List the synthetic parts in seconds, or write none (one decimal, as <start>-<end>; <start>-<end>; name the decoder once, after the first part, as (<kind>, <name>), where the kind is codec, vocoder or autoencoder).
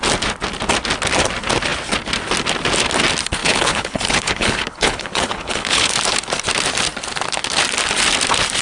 3.4-5.9 (codec, HILCodec)